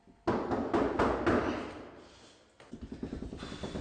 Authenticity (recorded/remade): recorded